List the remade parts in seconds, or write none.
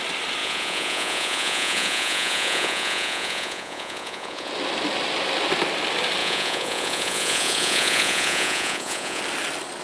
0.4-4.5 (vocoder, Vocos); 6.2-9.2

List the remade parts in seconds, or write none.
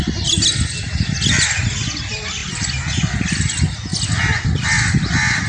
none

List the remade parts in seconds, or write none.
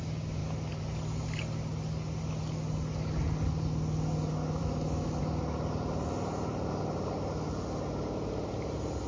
4.6-5.2 (autoencoder, DAC-VAE)